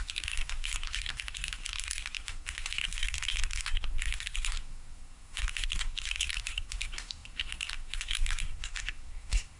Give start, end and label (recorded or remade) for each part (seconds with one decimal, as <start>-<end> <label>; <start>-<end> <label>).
0.0-9.6 remade